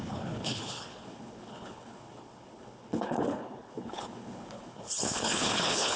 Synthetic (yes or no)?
yes